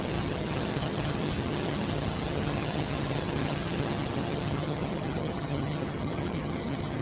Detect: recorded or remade remade